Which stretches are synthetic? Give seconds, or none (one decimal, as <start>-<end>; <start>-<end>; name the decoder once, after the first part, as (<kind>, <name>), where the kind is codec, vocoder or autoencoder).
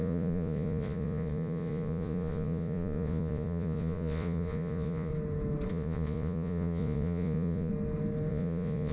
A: 0.0-5.1 (vocoder, Vocos); 5.7-7.7; 8.3-8.9